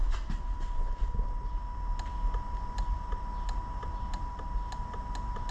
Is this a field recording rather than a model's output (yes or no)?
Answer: yes